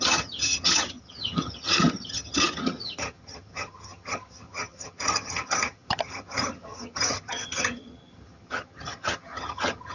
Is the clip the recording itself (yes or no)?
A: no